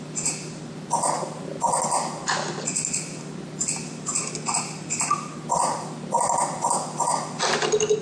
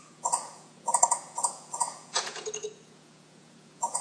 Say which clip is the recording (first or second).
first